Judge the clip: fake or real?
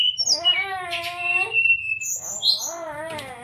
real